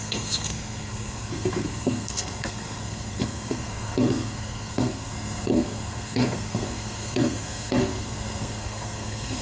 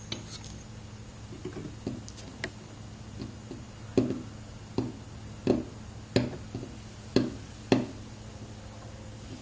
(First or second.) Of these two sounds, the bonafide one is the second